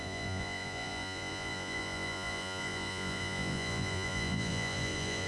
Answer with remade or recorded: remade